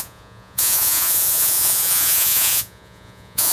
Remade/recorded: remade